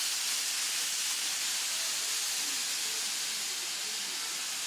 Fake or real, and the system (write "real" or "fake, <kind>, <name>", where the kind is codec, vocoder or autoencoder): real